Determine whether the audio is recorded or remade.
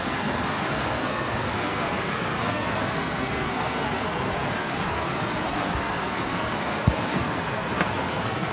remade